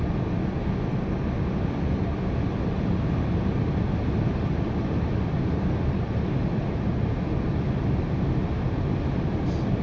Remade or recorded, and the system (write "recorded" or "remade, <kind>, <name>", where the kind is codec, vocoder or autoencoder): recorded